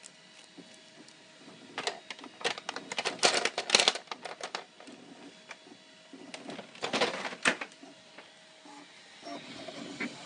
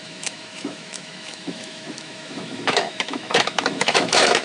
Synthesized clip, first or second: second